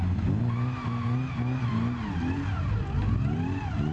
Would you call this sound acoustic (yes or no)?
yes